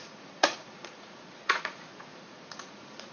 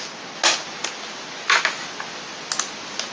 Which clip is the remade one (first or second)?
first